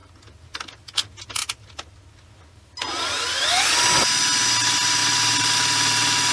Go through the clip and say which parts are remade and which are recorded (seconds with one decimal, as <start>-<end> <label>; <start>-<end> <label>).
0.0-5.0 recorded; 5.0-6.3 remade